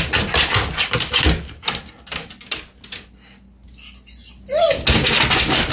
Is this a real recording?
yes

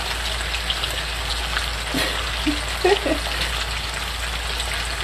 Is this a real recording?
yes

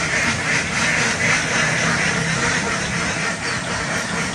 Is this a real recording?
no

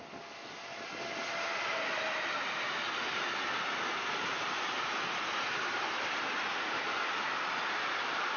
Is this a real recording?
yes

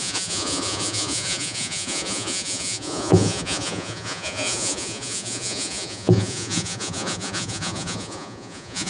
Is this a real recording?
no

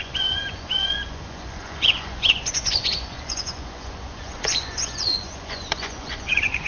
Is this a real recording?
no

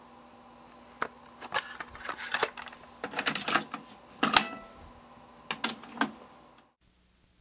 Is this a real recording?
yes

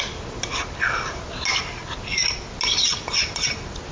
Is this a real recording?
yes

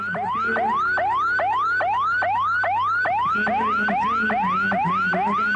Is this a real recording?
yes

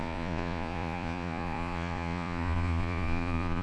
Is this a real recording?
no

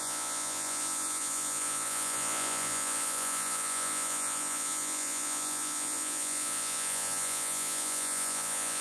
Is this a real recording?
no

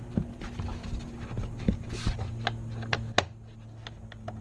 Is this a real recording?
yes